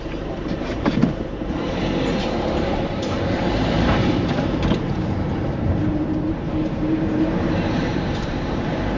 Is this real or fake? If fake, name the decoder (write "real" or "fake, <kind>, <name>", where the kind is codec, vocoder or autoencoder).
fake, vocoder, BigVGAN v2